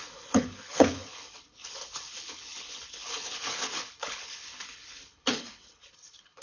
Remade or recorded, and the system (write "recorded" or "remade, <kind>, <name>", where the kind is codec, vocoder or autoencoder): remade, codec, HILCodec